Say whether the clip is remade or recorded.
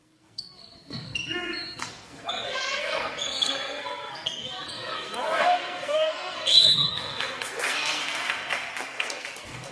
remade